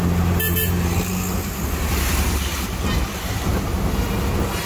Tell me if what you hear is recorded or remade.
recorded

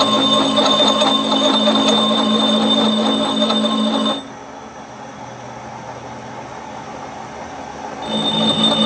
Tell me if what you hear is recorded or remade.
recorded